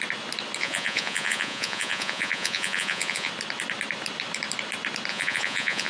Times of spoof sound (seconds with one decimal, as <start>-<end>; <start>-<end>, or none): 0.6-3.3; 5.1-5.9